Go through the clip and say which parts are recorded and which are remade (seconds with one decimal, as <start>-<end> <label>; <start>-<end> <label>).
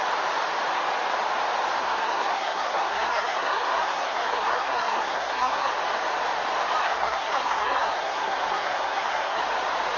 0.0-1.8 recorded; 1.8-5.7 remade; 5.7-6.8 recorded; 6.8-9.4 remade; 9.4-10.0 recorded